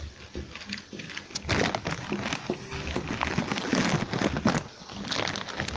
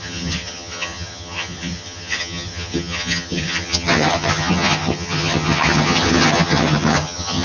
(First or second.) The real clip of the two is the first